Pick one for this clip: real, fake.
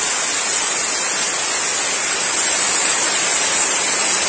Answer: real